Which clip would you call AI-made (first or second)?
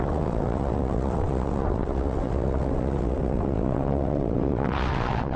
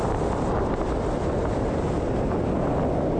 first